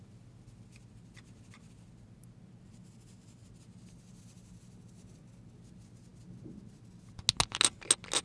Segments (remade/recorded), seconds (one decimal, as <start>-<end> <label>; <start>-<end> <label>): 0.0-8.2 recorded